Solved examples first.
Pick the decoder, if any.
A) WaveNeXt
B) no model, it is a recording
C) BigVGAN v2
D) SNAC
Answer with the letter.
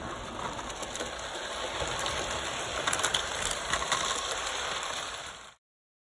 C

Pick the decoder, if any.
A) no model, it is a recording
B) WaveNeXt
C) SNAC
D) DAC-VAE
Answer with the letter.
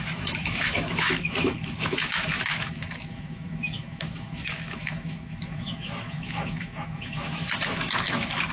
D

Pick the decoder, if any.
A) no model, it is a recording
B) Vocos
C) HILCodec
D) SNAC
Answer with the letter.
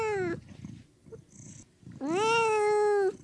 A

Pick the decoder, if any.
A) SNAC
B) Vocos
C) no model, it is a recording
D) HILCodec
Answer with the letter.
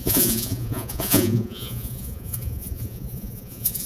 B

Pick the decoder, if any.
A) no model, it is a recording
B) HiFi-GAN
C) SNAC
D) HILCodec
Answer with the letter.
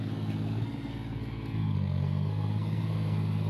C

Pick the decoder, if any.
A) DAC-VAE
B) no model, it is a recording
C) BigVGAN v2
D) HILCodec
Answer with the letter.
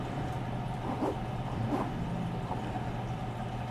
C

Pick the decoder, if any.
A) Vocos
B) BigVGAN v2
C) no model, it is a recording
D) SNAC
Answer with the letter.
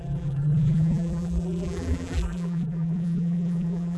B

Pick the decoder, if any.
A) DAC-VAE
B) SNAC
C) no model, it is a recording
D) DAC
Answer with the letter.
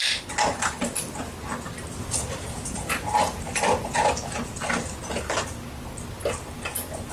C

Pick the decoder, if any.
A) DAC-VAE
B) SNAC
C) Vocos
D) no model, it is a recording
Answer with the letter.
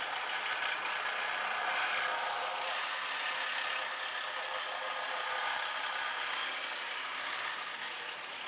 D